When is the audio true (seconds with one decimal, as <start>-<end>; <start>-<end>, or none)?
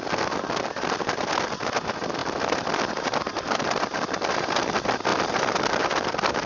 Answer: 0.0-6.5